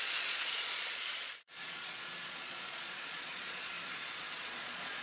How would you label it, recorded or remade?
remade